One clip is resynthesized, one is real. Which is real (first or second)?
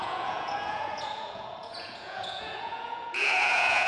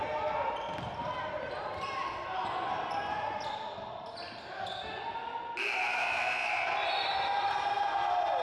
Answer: second